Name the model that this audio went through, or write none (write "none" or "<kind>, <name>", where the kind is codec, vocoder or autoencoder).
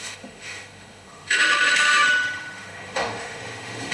autoencoder, DAC-VAE